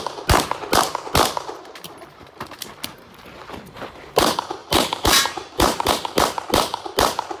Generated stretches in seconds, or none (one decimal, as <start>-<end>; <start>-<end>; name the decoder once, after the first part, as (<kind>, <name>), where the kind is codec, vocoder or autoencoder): 4.6-5.9 (vocoder, BigVGAN v2)